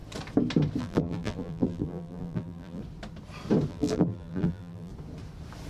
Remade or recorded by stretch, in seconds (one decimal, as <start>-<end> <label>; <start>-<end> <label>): 0.0-0.8 recorded; 0.8-2.8 remade; 2.8-3.7 recorded; 3.7-4.9 remade; 4.9-5.7 recorded